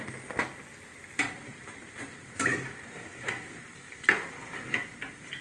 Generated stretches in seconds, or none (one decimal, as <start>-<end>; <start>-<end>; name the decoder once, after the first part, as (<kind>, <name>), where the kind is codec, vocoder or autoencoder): 0.9-3.6 (vocoder, BigVGAN v2)